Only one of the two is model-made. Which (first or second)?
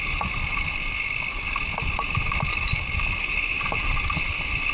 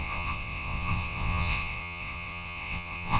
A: second